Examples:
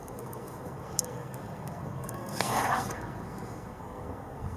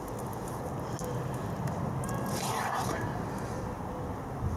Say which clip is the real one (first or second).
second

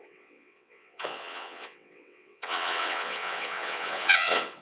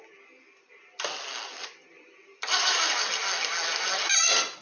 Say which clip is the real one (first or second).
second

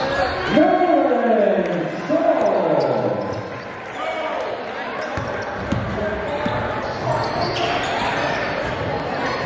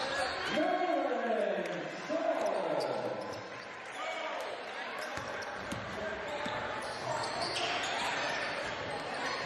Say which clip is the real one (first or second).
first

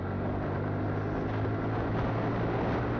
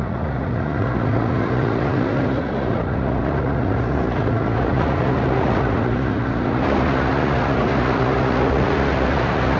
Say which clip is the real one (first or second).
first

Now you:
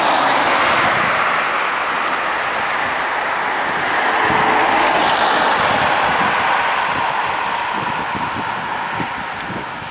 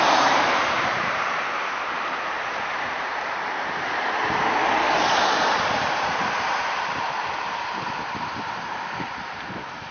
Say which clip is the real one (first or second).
first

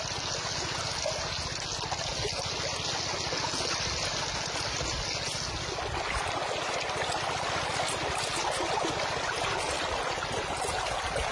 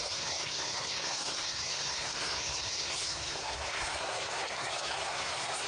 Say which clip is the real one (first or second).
first